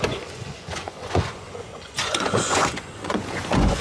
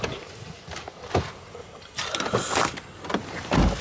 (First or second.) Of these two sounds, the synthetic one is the first